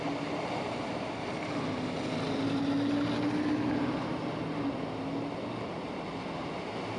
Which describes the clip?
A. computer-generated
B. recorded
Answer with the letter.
B